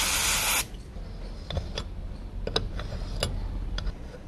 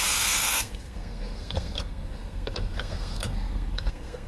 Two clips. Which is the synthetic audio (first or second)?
second